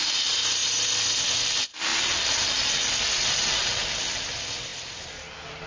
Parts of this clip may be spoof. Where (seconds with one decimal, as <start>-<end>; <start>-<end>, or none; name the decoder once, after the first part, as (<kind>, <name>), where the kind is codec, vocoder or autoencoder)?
none

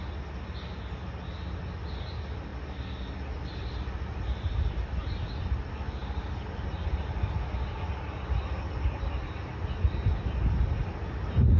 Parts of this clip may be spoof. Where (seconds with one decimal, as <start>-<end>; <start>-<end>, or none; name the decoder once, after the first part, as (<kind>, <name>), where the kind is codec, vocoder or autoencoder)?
none

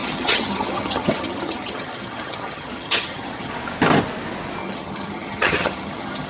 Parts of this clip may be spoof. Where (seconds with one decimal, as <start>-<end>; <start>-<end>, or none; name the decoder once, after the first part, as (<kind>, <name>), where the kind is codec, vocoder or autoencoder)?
0.0-3.5 (vocoder, HiFi-GAN); 4.6-6.3

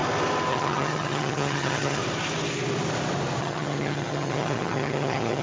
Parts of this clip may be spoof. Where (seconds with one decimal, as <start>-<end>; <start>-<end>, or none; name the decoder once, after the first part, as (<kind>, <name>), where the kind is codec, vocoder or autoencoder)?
0.5-2.0 (vocoder, HiFi-GAN); 3.4-5.4

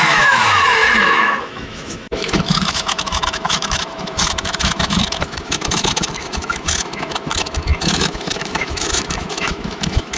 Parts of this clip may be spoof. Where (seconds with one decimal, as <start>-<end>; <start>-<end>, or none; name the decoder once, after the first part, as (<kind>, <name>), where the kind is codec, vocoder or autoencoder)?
0.0-10.2 (autoencoder, DAC-VAE)

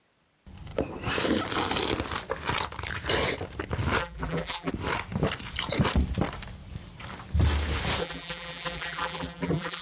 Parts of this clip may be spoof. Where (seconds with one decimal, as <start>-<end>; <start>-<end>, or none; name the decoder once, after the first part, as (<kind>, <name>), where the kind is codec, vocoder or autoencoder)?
4.0-4.7 (vocoder, BigVGAN v2); 8.0-9.8

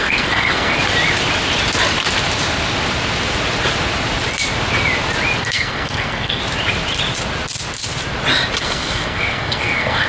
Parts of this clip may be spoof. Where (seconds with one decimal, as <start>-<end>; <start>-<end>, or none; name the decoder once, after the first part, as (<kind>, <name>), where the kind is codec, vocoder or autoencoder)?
0.0-0.8 (codec, SNAC); 5.4-6.4; 8.6-10.1